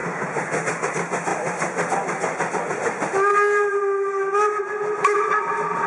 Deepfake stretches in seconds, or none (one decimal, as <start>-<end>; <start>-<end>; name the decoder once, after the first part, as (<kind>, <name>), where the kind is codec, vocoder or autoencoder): none